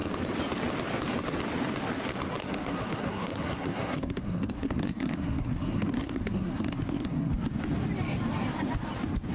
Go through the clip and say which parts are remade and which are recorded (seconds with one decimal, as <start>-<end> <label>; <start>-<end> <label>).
0.0-2.4 recorded; 2.4-7.3 remade; 7.3-9.3 recorded